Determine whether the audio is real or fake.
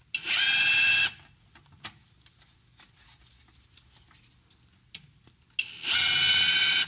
real